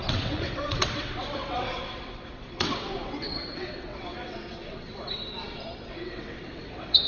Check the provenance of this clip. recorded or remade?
remade